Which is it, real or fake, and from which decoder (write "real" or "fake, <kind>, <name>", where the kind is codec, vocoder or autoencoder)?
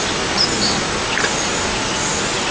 real